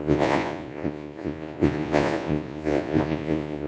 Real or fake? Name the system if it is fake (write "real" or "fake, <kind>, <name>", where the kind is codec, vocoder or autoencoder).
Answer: fake, vocoder, Vocos